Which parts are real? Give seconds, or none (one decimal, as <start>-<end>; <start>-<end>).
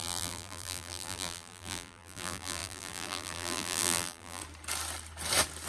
4.4-5.7